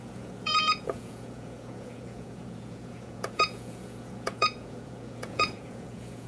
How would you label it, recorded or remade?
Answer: remade